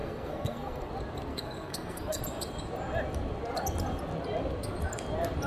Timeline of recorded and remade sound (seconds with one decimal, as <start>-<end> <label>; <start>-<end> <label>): 0.0-0.9 remade; 0.9-1.3 recorded; 1.3-2.2 remade; 2.2-5.5 recorded